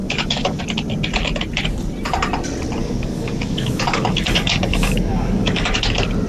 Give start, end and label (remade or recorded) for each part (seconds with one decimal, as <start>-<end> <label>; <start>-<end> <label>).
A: 0.0-0.6 remade; 0.6-2.8 recorded; 2.8-5.8 remade; 5.8-6.3 recorded